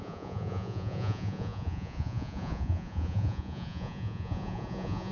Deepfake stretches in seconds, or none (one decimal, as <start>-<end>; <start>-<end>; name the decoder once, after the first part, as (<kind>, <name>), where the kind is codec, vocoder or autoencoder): 0.0-5.1 (vocoder, Vocos)